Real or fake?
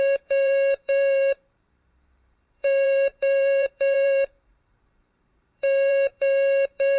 fake